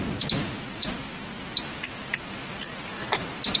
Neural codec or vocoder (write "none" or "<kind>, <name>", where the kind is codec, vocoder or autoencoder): none